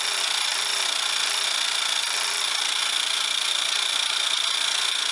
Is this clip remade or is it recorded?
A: recorded